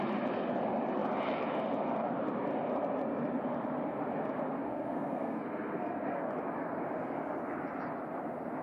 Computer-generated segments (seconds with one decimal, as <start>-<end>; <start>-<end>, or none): 4.6-6.3